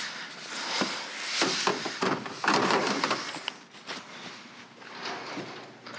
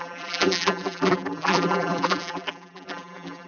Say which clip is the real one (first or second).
first